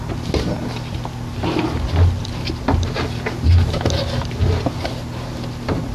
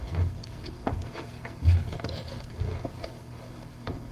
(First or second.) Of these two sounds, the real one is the first